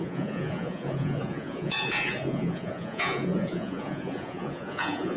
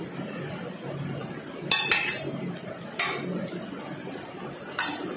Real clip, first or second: second